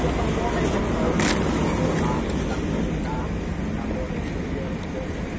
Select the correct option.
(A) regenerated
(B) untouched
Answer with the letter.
B